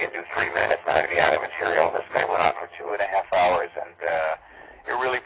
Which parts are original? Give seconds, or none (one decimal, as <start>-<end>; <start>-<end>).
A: 2.9-3.6; 4.1-5.3